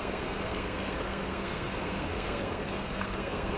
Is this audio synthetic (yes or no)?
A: yes